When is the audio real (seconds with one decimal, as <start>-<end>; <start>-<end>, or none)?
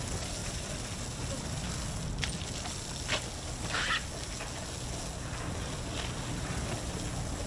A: 0.0-7.5